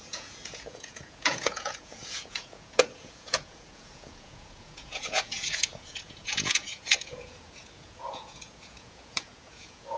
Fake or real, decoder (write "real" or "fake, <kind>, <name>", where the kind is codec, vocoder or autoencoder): fake, vocoder, Vocos